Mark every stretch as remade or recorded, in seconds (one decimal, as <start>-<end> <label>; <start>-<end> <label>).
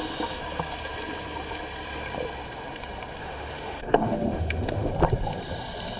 0.0-3.2 recorded; 3.2-4.9 remade; 4.9-6.0 recorded